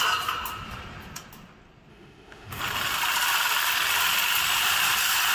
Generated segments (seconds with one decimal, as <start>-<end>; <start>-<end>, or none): 1.9-2.6